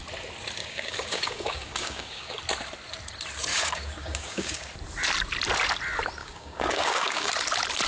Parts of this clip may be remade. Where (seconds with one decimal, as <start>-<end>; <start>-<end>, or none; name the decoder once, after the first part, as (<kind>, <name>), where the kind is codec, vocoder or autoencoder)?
0.6-2.4 (codec, DAC); 3.5-4.7; 6.2-7.3